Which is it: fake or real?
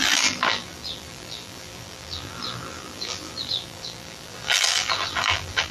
fake